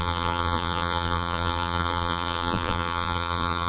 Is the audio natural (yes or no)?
no